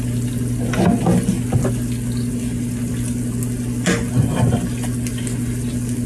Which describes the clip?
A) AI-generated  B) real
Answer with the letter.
B